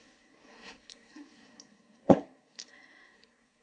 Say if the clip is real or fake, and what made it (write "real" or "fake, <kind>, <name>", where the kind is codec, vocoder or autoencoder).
fake, codec, SNAC